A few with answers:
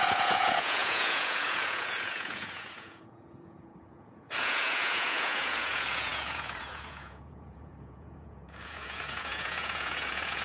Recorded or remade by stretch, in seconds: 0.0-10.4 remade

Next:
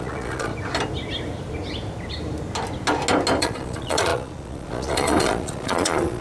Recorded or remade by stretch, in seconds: 0.0-0.5 remade; 0.5-3.4 recorded; 3.4-6.2 remade

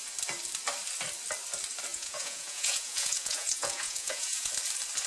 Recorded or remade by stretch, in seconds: 0.0-1.9 recorded; 1.9-4.5 remade; 4.5-5.1 recorded

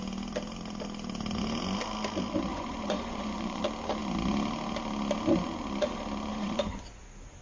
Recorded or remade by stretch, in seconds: 0.0-2.5 recorded; 2.5-3.6 remade; 3.6-6.3 recorded; 6.3-7.0 remade; 7.0-7.4 recorded

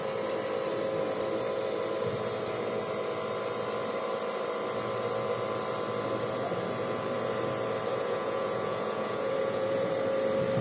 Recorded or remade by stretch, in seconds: 0.0-7.9 recorded; 7.9-9.9 remade; 9.9-10.6 recorded